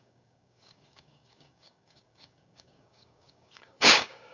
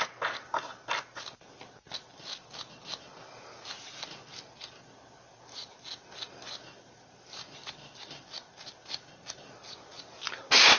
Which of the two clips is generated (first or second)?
first